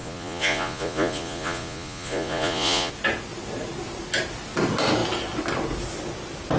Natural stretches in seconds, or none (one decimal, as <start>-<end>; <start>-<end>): 2.9-6.6